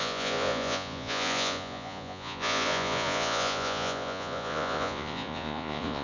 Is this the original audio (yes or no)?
no